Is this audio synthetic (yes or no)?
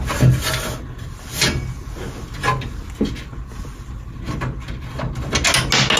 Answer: no